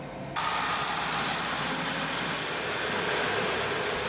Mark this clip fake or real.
real